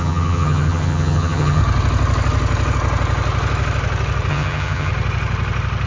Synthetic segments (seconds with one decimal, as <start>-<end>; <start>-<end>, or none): 0.0-1.6; 4.3-4.9